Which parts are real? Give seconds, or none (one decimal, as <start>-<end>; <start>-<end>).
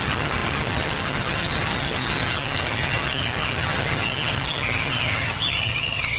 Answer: none